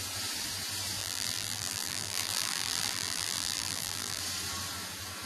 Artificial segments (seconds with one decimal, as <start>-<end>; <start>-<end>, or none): 1.0-4.2